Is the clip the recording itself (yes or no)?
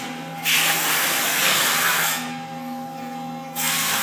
no